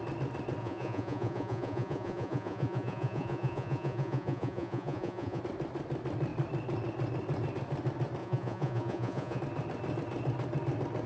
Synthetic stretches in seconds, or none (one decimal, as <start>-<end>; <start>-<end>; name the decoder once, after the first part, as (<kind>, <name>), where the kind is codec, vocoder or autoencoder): 0.6-5.4 (vocoder, Vocos); 8.2-9.4